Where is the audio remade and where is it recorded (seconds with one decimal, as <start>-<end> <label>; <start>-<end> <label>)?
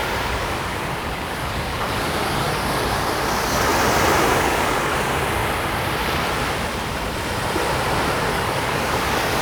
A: 0.0-3.7 remade; 3.7-4.3 recorded; 4.3-5.4 remade; 5.4-8.3 recorded; 8.3-9.4 remade